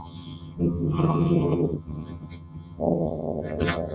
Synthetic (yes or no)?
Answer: yes